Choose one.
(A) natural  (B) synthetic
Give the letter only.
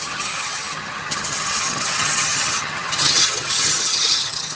B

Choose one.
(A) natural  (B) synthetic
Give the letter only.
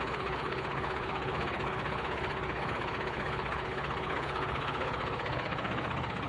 B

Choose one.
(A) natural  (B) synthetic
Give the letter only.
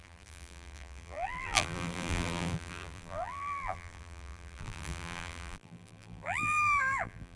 B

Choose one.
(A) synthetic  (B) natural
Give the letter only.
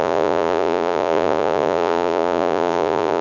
A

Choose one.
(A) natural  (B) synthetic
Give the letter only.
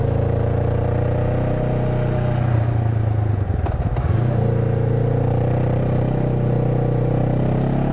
A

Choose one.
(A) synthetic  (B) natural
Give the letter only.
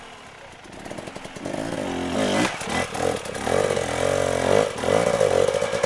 B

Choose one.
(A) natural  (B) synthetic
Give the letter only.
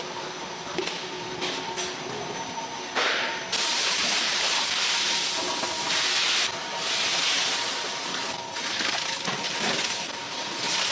A